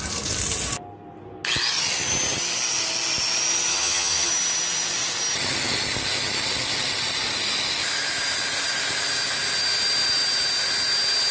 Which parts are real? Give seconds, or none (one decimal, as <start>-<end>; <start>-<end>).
0.0-3.7; 4.3-11.3